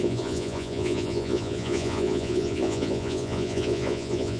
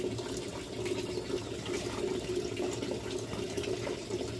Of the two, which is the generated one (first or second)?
first